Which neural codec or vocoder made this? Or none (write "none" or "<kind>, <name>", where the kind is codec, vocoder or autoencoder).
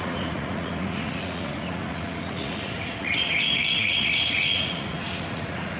vocoder, Vocos